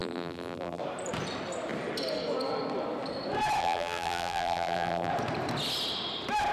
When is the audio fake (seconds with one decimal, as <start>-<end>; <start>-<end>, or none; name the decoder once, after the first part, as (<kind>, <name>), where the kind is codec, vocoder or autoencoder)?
0.0-0.8 (vocoder, BigVGAN v2); 3.6-5.1